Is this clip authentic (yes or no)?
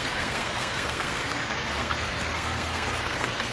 no